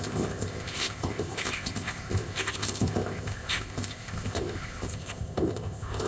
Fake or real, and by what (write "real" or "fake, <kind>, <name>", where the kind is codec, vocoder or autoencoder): fake, codec, ZipCodec